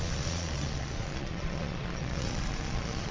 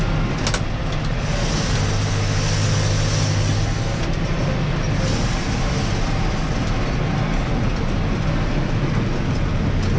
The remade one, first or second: first